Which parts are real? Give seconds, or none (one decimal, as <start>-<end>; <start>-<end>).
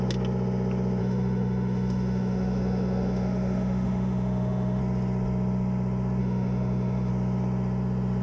0.0-1.0; 4.8-6.2; 7.1-8.2